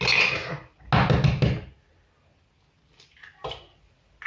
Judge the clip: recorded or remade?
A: recorded